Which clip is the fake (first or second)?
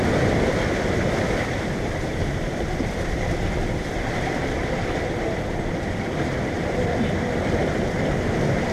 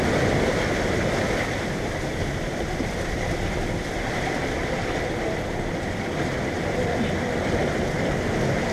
first